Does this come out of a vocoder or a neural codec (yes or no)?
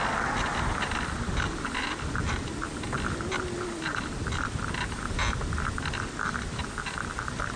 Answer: no